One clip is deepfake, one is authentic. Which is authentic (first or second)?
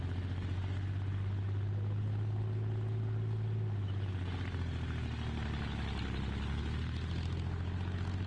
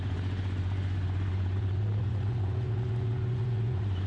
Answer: first